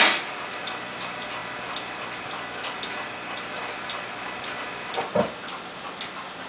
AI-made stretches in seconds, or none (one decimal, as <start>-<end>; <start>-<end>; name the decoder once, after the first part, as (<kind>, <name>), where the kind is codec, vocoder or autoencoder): none